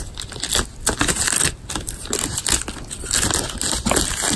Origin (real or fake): real